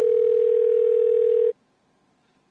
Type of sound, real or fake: real